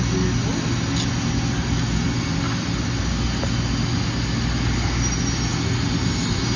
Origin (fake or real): real